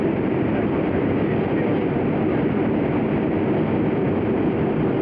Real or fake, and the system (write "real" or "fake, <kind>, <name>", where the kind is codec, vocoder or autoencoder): real